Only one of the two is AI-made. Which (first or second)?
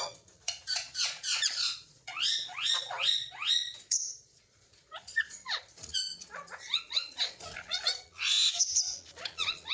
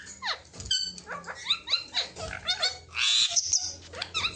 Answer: first